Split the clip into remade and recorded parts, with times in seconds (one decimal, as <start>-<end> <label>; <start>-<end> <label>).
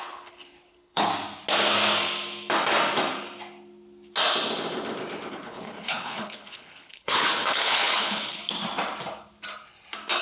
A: 0.0-1.1 remade; 1.1-5.3 recorded; 5.3-8.4 remade; 8.4-10.2 recorded